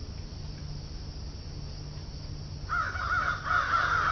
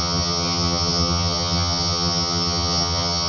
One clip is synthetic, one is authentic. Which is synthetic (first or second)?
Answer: second